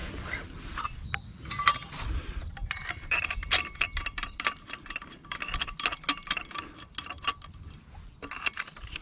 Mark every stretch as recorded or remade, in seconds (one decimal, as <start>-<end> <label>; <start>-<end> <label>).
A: 0.0-0.8 remade; 0.8-2.4 recorded; 2.4-5.6 remade; 5.6-9.0 recorded